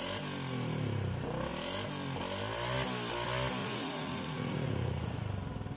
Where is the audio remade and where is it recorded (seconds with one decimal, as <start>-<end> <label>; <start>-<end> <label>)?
0.0-3.6 recorded; 3.6-5.2 remade; 5.2-5.8 recorded